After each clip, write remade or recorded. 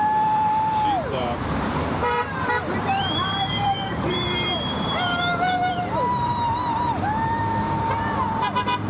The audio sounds remade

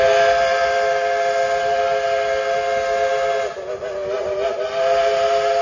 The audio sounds recorded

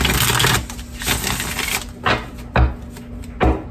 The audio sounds recorded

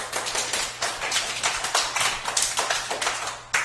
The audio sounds recorded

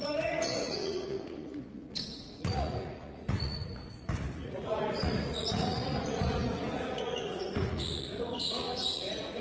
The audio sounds remade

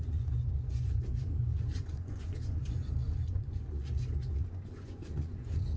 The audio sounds remade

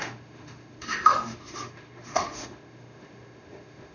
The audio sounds remade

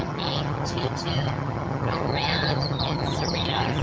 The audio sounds remade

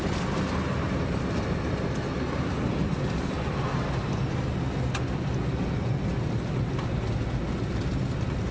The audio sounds recorded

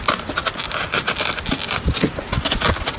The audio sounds recorded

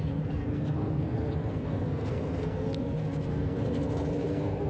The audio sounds remade